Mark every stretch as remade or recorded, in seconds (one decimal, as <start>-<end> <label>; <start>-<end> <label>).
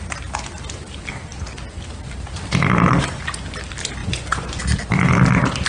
0.0-4.0 recorded; 4.0-4.6 remade; 4.6-5.7 recorded